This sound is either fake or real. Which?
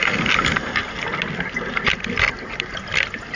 real